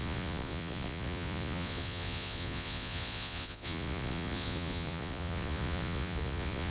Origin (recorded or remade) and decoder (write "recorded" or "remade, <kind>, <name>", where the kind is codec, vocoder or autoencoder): remade, vocoder, Vocos